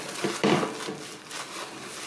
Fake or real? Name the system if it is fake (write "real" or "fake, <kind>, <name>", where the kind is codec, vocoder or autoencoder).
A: real